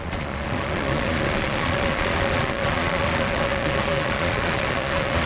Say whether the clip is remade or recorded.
remade